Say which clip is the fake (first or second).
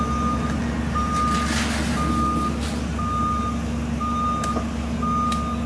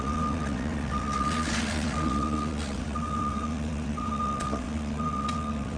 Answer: second